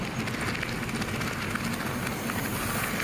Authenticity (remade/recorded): recorded